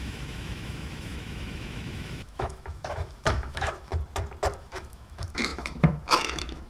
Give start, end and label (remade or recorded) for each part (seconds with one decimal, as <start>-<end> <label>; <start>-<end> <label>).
0.0-3.9 remade; 3.9-4.6 recorded; 4.6-6.7 remade